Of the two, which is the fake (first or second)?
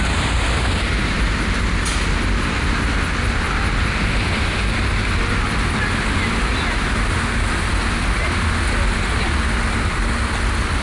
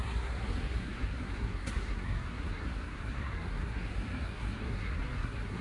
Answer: second